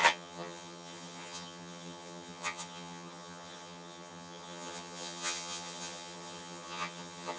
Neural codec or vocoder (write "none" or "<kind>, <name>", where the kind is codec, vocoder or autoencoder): vocoder, HiFi-GAN